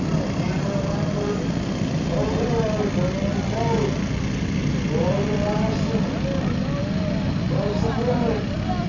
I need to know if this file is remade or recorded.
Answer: recorded